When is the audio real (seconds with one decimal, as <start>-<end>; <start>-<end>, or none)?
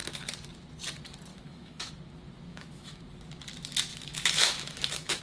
0.0-1.3; 1.9-2.5; 3.0-3.9